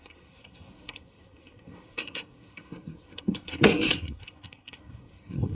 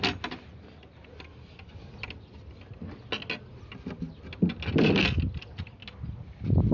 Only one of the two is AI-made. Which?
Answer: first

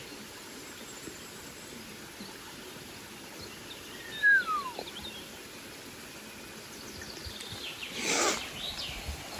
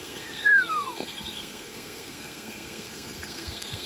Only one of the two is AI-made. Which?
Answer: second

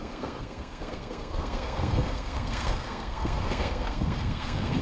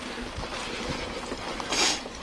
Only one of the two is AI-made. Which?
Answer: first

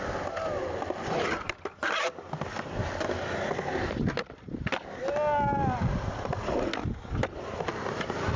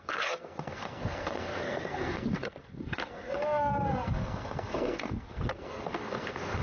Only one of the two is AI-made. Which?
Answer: second